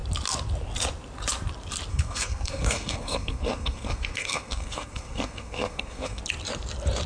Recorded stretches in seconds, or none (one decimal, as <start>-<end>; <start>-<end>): 0.0-1.9; 6.2-7.1